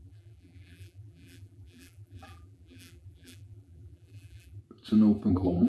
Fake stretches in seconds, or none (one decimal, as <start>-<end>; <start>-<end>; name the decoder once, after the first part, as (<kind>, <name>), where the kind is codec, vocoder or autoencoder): 0.0-4.6 (vocoder, BigVGAN v2); 5.3-5.7